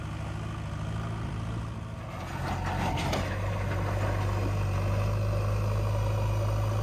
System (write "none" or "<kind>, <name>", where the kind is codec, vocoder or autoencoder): none